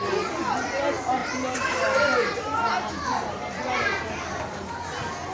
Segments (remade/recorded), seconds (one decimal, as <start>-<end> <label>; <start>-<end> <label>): 0.0-1.2 recorded; 1.2-3.6 remade; 3.6-5.3 recorded